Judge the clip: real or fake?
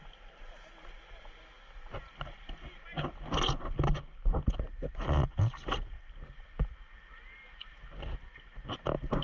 real